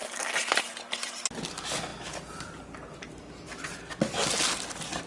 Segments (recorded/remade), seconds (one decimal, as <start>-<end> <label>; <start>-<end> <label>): 0.0-5.1 recorded